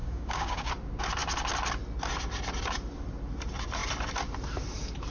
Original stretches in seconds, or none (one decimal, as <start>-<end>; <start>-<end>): 0.7-5.1